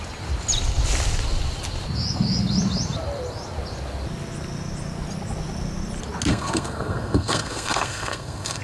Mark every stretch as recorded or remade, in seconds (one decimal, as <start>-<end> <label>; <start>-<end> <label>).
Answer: 0.0-6.3 recorded; 6.3-8.6 remade